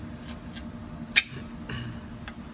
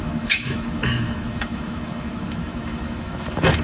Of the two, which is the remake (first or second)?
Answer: second